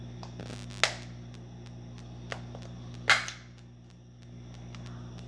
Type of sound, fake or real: real